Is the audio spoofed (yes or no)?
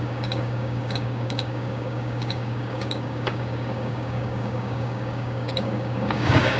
yes